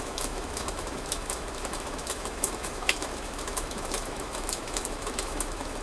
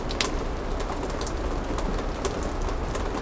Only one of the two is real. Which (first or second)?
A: second